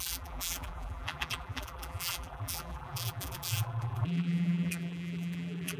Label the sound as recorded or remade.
remade